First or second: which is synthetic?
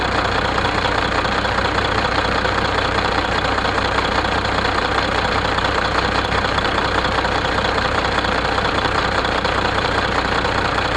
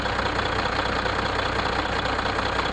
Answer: first